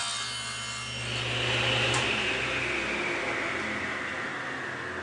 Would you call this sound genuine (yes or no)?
yes